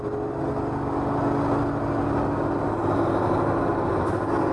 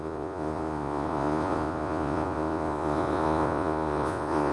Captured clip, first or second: first